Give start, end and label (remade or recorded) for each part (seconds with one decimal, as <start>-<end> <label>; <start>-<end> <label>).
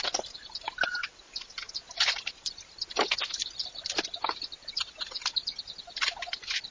0.0-6.7 recorded